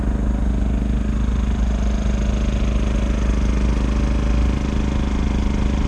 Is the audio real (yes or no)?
yes